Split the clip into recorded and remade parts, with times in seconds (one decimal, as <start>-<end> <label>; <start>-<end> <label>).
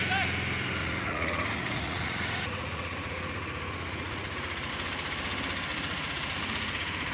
0.0-0.8 recorded; 0.8-4.7 remade; 4.7-5.7 recorded; 5.7-7.1 remade